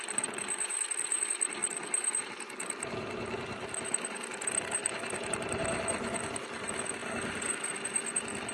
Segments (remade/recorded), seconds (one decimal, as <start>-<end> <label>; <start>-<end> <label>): 0.0-8.5 recorded